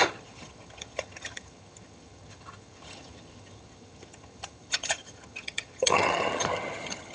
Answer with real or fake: fake